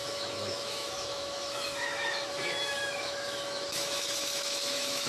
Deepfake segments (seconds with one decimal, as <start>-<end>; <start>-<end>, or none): 0.0-5.1